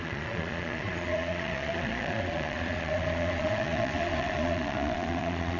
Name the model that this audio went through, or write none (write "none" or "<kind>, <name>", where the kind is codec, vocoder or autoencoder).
vocoder, Vocos